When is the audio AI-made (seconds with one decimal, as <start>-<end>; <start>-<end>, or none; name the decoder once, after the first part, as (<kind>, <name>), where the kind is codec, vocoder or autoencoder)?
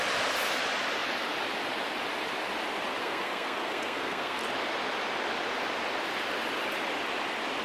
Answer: 3.0-4.4 (codec, SNAC)